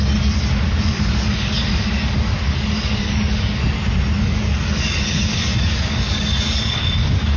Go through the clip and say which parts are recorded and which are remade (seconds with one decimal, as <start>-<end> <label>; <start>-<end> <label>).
0.0-3.6 remade; 3.6-4.2 recorded; 4.2-7.4 remade